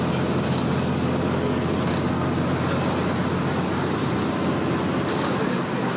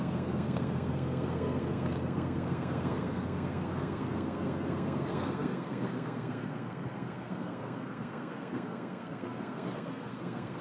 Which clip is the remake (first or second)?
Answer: second